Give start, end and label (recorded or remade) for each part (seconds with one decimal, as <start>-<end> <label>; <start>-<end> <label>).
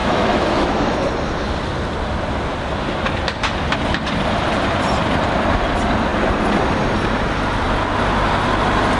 0.0-1.1 remade; 1.1-9.0 recorded